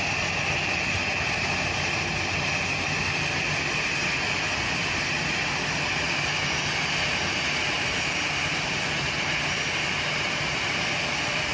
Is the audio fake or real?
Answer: real